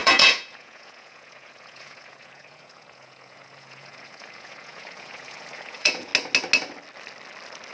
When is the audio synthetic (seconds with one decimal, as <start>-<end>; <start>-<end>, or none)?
0.0-6.1